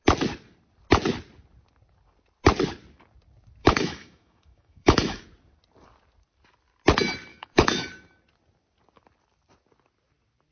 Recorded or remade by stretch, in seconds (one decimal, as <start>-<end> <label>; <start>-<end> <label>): 0.0-3.6 recorded; 3.6-5.2 remade; 5.2-7.3 recorded; 7.3-7.9 remade; 7.9-10.5 recorded